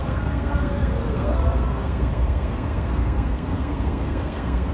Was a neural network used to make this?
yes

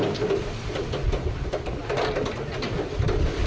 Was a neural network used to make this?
no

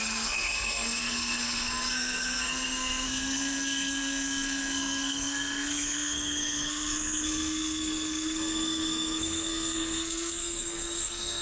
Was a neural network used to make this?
yes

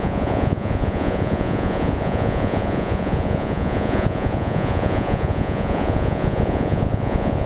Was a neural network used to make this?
yes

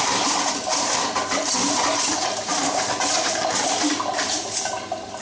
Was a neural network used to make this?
no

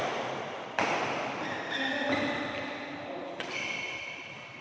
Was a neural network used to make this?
no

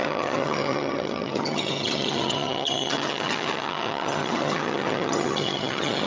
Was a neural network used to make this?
yes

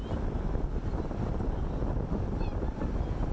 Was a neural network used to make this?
no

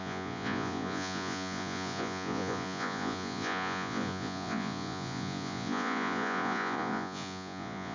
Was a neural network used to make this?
yes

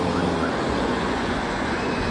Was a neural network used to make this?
yes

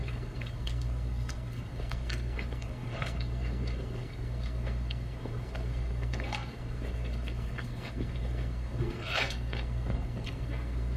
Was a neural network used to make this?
yes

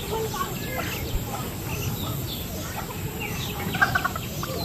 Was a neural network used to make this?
no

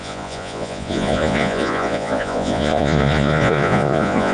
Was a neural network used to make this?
yes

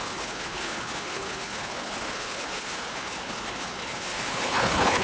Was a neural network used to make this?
yes